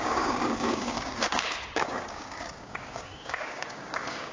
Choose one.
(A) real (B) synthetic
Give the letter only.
B